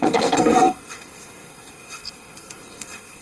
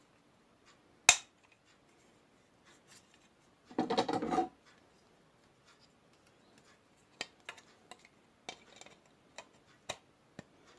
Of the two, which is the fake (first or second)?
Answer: first